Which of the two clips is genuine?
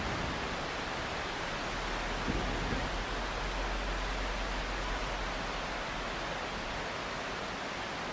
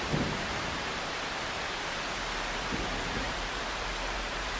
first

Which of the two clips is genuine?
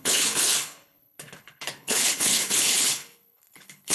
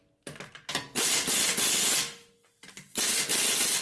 second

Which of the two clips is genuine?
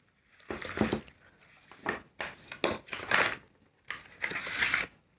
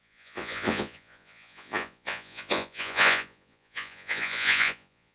first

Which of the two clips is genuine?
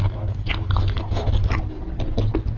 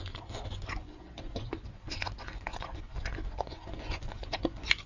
first